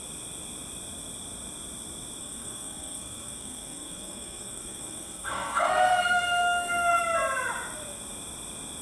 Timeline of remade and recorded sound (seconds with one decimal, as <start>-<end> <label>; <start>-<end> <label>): 0.0-2.2 recorded; 2.2-7.0 remade; 7.0-8.8 recorded